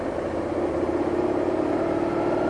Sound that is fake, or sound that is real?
real